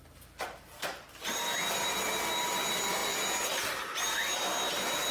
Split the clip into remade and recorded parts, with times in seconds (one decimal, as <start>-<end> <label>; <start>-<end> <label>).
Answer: 0.0-5.1 recorded